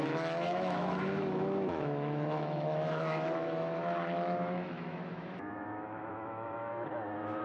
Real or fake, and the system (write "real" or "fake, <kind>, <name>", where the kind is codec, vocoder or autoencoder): fake, autoencoder, DAC-VAE